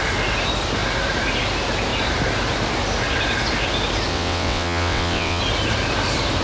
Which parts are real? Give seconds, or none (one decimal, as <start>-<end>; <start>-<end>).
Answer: 0.0-4.1; 5.4-6.4